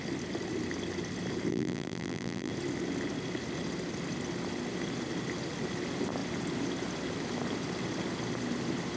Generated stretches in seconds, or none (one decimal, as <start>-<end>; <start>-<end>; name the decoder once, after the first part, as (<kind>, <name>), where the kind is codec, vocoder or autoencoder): 1.5-2.5 (vocoder, BigVGAN v2)